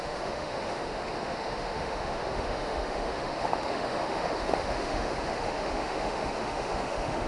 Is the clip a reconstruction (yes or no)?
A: yes